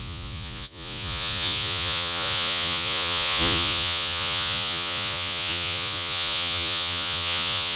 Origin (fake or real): fake